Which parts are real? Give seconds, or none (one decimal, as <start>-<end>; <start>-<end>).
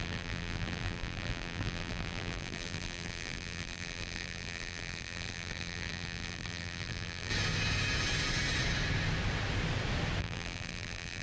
7.3-10.2